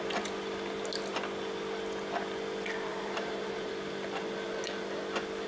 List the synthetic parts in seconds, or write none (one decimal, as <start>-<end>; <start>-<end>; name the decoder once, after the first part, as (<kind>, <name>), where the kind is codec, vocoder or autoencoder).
2.9-3.7 (vocoder, BigVGAN v2)